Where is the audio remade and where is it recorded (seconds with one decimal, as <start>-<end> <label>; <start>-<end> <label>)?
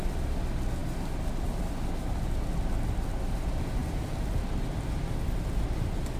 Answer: 0.0-6.2 recorded